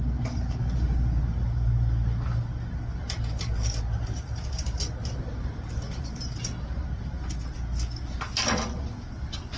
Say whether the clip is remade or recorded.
recorded